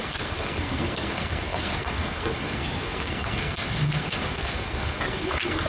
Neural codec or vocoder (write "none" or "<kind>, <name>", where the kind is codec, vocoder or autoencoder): codec, SNAC